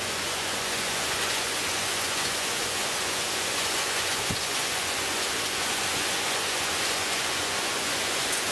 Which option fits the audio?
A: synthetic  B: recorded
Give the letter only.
A